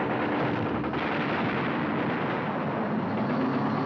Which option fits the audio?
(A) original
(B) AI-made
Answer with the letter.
A